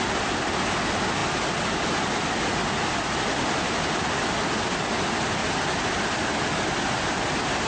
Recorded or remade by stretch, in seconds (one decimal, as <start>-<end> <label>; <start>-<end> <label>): 0.0-7.7 recorded